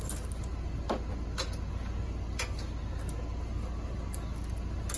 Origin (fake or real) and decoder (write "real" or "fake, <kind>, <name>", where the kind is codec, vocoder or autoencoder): real